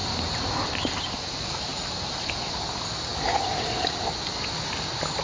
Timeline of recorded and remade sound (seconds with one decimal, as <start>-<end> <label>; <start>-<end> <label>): 0.0-1.2 remade; 1.2-1.7 recorded; 1.7-2.3 remade; 2.3-5.2 recorded